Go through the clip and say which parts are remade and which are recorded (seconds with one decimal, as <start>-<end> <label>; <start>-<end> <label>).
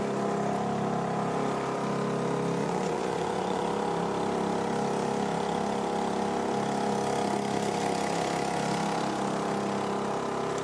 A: 0.0-2.6 recorded; 2.6-3.6 remade; 3.6-10.6 recorded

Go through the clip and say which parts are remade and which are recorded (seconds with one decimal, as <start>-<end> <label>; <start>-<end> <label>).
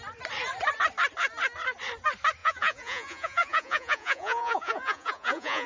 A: 0.0-2.4 recorded; 2.4-5.7 remade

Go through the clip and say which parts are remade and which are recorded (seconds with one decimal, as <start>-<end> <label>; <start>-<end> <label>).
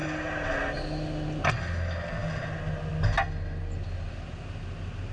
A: 0.0-5.1 recorded